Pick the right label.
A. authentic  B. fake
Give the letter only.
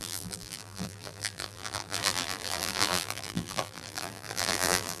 B